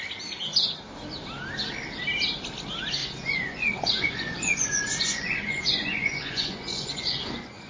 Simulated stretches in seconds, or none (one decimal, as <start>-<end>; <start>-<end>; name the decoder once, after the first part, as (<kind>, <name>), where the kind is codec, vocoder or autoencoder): 3.0-7.7 (vocoder, Vocos)